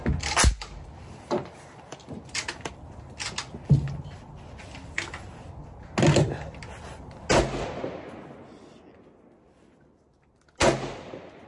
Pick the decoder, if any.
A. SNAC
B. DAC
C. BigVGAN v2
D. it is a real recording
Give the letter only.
D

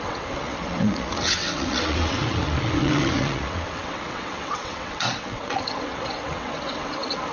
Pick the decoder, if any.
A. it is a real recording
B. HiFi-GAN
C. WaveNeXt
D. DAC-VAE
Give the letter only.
C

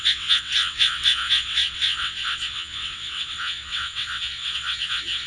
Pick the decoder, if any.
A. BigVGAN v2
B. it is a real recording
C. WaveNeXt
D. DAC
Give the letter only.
C